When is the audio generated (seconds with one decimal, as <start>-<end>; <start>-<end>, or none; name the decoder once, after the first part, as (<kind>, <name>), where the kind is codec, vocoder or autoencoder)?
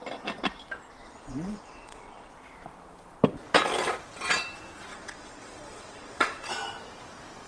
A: 1.0-2.3 (vocoder, WaveNeXt); 4.9-6.5